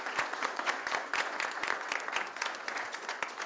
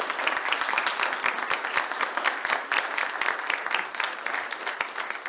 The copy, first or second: first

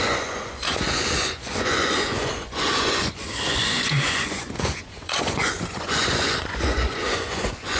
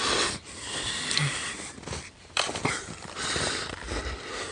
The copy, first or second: first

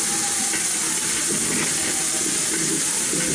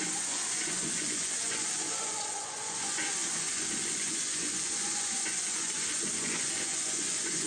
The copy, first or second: second